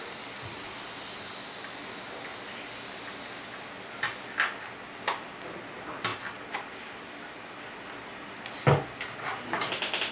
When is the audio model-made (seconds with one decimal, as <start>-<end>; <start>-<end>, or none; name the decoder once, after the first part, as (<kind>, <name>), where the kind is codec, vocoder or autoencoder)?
none